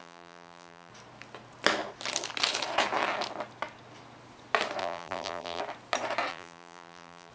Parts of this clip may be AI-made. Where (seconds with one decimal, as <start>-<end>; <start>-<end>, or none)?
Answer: 0.0-0.9; 4.8-5.6; 6.3-7.3